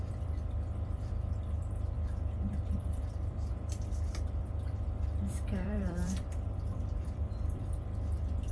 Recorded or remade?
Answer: remade